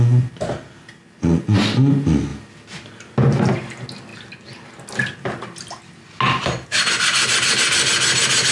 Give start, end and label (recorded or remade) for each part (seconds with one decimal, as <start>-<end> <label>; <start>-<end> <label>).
0.0-8.5 recorded